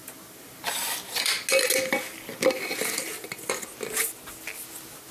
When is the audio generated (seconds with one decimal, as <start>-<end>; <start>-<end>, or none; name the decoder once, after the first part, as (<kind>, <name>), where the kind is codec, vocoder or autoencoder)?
none